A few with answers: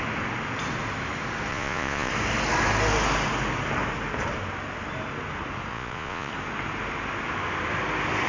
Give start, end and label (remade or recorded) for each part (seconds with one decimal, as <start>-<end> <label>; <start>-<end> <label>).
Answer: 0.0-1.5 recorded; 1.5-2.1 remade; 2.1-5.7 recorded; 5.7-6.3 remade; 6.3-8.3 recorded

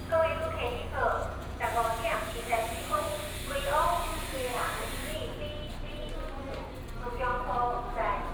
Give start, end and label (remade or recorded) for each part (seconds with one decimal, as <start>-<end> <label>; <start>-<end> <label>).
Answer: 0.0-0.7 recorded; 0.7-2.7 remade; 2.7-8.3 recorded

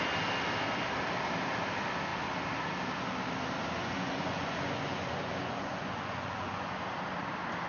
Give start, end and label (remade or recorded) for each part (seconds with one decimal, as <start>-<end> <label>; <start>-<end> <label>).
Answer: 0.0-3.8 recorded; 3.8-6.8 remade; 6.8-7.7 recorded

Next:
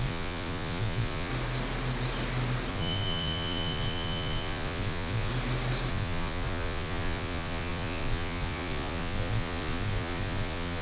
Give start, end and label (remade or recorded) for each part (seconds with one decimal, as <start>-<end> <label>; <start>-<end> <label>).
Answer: 0.0-1.3 remade; 1.3-2.7 recorded; 2.7-5.3 remade; 5.3-5.9 recorded; 5.9-10.8 remade

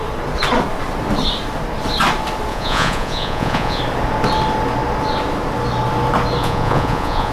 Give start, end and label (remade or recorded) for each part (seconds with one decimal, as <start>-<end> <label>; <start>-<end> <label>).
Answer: 0.0-2.5 recorded; 2.5-3.8 remade; 3.8-6.4 recorded; 6.4-7.3 remade